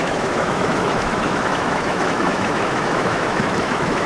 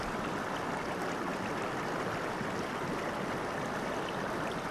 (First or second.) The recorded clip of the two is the second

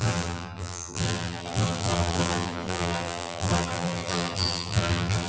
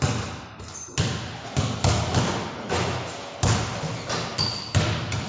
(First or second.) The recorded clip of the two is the second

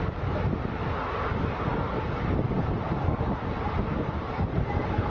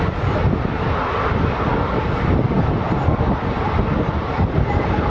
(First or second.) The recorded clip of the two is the first